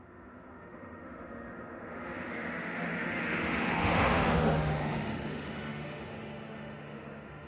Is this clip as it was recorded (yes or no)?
no